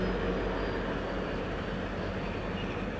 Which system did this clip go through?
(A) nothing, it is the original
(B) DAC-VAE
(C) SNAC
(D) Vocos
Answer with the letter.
A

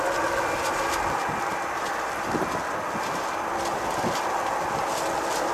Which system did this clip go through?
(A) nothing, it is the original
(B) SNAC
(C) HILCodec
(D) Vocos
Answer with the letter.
A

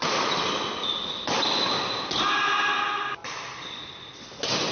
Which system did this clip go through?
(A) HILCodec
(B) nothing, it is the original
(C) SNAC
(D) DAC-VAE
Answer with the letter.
B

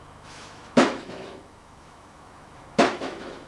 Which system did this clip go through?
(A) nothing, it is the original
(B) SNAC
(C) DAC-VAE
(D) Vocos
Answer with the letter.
C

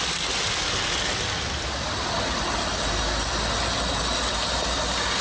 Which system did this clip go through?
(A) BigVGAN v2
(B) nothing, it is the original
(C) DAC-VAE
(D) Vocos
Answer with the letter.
B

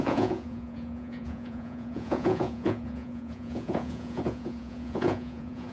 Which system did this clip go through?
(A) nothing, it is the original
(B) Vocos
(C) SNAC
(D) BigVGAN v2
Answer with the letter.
B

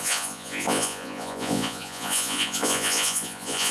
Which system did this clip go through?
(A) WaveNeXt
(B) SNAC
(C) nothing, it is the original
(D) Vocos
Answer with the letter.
D